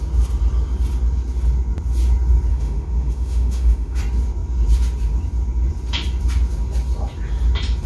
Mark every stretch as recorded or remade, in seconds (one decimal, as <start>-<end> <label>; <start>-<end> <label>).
0.0-2.5 recorded; 2.5-4.0 remade; 4.0-7.9 recorded